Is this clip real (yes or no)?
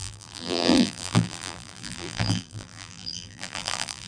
no